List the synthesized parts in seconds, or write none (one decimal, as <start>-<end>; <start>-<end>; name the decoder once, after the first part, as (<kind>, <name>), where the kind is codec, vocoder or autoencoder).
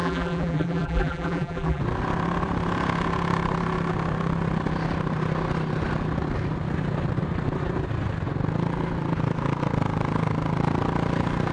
0.0-1.8 (vocoder, BigVGAN v2)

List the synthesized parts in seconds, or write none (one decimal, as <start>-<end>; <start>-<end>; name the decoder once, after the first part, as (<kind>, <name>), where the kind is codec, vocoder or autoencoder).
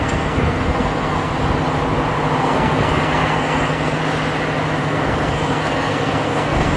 0.0-1.3 (codec, SNAC); 2.4-4.0; 4.8-6.8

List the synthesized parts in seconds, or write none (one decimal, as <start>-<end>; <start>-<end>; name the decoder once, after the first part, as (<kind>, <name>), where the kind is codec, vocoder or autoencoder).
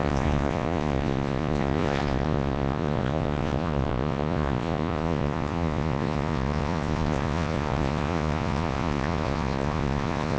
0.0-10.4 (vocoder, Vocos)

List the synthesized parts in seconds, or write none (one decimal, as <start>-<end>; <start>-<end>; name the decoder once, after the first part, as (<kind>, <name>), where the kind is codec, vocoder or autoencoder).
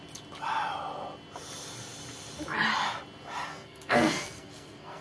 3.5-5.0 (codec, SNAC)